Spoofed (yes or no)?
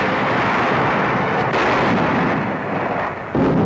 no